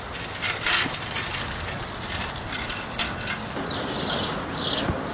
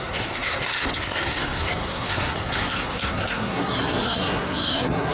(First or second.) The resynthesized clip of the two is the second